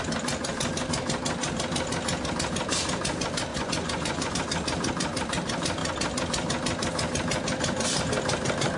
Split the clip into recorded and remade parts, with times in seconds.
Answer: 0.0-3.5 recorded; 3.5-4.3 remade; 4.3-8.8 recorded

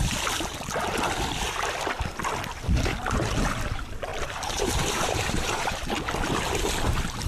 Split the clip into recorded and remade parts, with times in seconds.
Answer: 0.0-4.1 recorded; 4.1-5.9 remade; 5.9-7.3 recorded

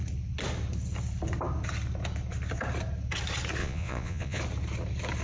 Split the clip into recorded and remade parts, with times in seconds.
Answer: 0.0-3.6 recorded; 3.6-4.4 remade; 4.4-5.2 recorded